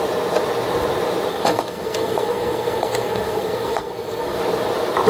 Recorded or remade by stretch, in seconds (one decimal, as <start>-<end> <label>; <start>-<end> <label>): 0.0-1.3 recorded; 1.3-4.4 remade; 4.4-5.1 recorded